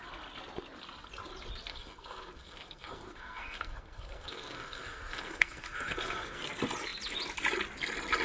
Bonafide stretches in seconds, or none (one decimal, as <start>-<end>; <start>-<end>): 0.0-1.7; 6.4-8.2